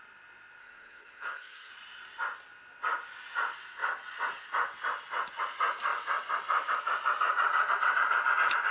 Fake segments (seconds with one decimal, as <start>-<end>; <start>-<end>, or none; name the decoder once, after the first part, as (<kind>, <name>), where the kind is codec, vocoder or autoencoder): 0.6-1.7 (codec, HILCodec)